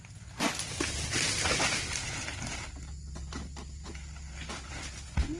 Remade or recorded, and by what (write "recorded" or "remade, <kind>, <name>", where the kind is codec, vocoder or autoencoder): recorded